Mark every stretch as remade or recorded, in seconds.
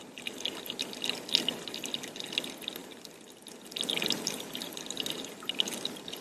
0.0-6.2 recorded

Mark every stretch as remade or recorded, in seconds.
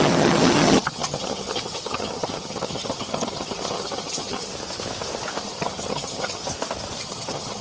0.0-4.5 remade; 4.5-5.4 recorded; 5.4-6.4 remade; 6.4-7.0 recorded; 7.0-7.6 remade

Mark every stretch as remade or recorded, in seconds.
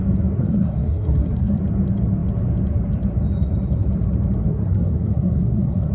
0.0-0.4 recorded; 0.4-1.6 remade; 1.6-4.5 recorded; 4.5-5.9 remade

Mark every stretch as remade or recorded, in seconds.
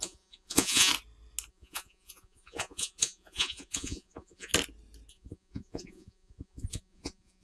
0.0-0.9 remade; 0.9-1.5 recorded; 1.5-4.5 remade; 4.5-5.1 recorded; 5.1-7.4 remade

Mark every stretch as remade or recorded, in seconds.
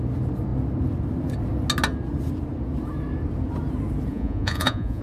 0.0-4.1 recorded; 4.1-5.0 remade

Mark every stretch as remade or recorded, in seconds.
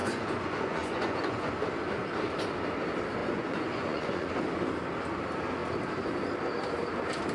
0.0-1.5 remade; 1.5-3.2 recorded; 3.2-4.3 remade; 4.3-7.3 recorded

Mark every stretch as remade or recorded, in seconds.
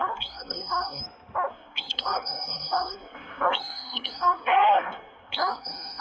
0.0-1.0 remade; 1.0-1.5 recorded; 1.5-6.0 remade